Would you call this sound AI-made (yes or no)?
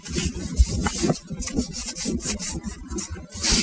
no